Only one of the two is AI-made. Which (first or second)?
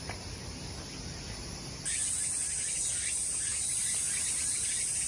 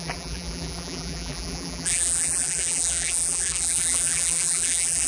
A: second